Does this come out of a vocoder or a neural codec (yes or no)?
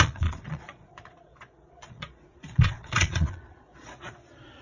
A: yes